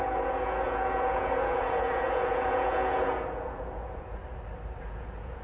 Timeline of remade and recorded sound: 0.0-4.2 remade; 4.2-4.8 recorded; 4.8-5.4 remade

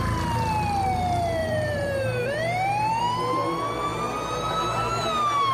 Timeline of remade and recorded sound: 0.0-1.4 recorded; 1.4-3.0 remade; 3.0-5.5 recorded

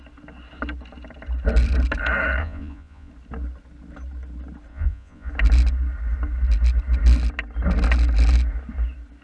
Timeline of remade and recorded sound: 0.0-2.4 recorded; 2.4-3.1 remade; 3.1-4.7 recorded; 4.7-5.3 remade; 5.3-9.2 recorded

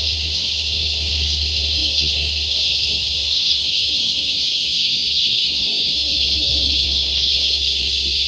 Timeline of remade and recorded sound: 0.0-8.3 remade

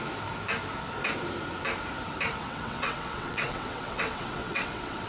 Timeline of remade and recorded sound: 0.0-2.3 recorded; 2.3-5.1 remade

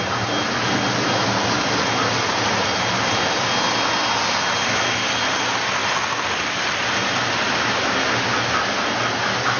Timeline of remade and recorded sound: 0.0-9.6 recorded

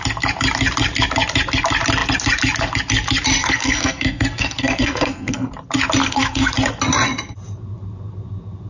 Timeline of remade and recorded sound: 0.0-3.4 recorded; 3.4-5.5 remade; 5.5-6.0 recorded; 6.0-6.5 remade; 6.5-8.7 recorded

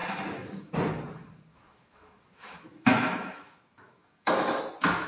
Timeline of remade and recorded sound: 0.0-0.7 remade; 0.7-1.5 recorded; 1.5-4.6 remade; 4.6-5.1 recorded